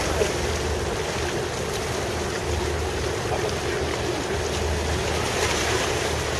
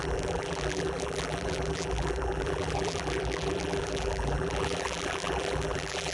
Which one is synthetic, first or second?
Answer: second